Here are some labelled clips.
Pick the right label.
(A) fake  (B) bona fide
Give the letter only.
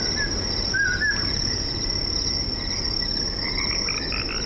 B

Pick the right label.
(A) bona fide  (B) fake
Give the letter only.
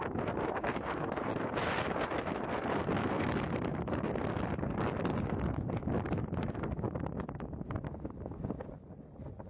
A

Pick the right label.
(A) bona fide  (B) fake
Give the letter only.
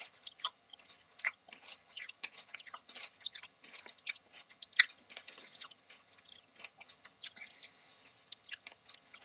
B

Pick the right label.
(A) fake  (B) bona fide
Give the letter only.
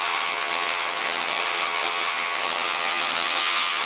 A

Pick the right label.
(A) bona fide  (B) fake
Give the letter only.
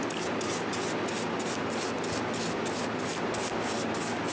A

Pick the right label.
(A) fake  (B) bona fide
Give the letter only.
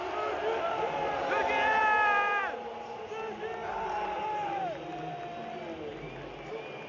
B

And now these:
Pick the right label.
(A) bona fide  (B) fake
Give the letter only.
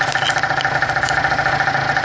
A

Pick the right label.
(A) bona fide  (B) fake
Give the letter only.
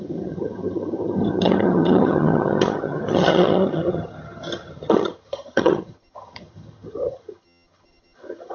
B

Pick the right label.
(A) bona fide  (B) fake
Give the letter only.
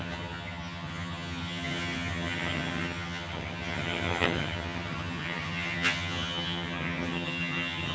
B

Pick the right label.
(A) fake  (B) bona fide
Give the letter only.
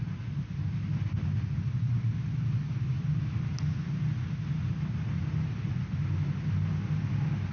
B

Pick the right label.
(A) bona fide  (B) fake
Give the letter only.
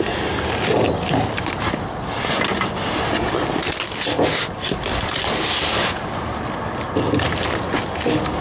A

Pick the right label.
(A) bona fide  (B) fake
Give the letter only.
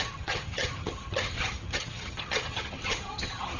B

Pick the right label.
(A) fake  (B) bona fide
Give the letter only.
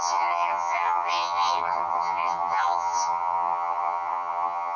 A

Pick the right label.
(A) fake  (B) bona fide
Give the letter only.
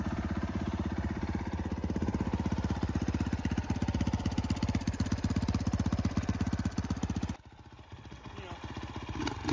B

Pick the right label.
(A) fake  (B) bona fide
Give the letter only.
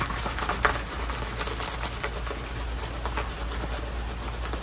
B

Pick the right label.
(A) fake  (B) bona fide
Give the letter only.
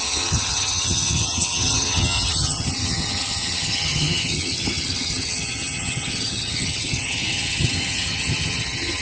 A